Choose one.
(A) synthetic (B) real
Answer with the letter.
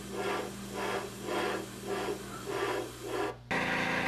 B